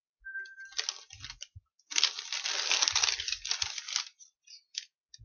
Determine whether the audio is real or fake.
real